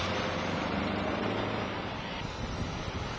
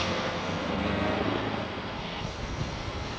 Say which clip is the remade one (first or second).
second